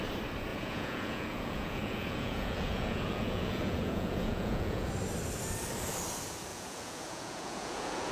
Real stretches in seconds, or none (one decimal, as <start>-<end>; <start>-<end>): 0.0-0.5; 4.9-6.5